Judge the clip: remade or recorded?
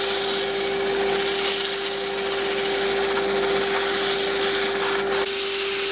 recorded